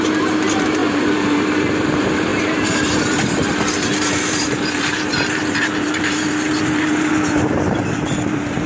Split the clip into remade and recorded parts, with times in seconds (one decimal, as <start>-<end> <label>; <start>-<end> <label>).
0.0-8.7 remade